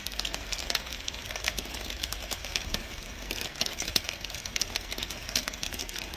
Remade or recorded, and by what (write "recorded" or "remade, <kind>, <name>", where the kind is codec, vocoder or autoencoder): remade, codec, SNAC